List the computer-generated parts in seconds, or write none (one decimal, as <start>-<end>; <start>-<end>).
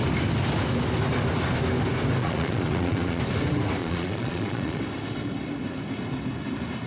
2.2-3.2; 3.8-4.8